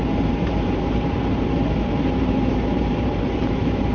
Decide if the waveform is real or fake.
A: fake